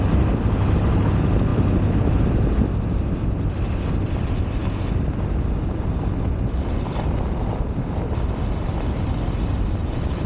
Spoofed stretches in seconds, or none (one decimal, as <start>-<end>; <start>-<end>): 0.0-10.3